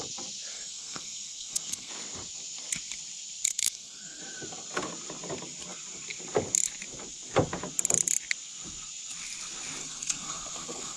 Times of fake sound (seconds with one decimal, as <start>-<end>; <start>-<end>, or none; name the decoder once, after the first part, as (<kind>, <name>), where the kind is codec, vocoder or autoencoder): 0.5-1.9 (codec, SNAC); 3.5-4.2; 9.8-11.0

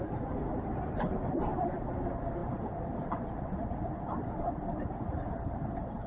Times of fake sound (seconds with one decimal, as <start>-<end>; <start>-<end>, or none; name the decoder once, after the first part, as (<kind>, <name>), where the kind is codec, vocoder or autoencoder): 1.5-2.0 (vocoder, BigVGAN v2); 2.4-6.1

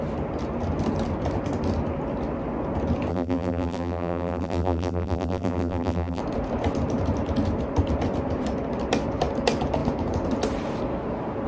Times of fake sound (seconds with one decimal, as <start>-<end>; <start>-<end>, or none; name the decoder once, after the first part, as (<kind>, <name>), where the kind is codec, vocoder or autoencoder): 3.1-6.2 (vocoder, BigVGAN v2)

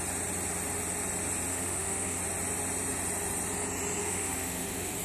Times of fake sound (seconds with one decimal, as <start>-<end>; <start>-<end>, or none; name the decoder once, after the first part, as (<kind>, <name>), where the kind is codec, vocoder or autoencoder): 1.5-2.2 (autoencoder, DAC-VAE); 4.0-5.0

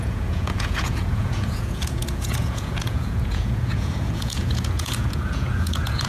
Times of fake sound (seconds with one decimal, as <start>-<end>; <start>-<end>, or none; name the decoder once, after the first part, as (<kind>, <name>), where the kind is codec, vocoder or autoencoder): 0.0-6.1 (vocoder, Vocos)

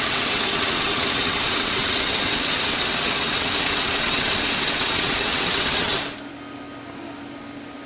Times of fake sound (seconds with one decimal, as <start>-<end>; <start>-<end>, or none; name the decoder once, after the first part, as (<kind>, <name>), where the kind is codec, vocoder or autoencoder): 0.0-5.9 (vocoder, WaveNeXt)

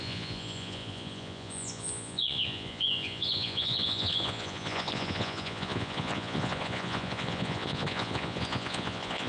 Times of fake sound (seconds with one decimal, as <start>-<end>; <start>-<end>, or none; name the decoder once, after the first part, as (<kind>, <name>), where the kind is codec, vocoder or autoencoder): 0.0-9.3 (vocoder, Vocos)

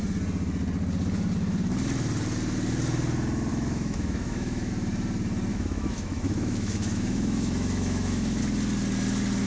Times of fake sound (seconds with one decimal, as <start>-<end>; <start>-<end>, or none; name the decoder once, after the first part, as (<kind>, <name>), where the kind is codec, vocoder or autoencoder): 3.5-4.7 (autoencoder, DAC-VAE); 5.5-8.4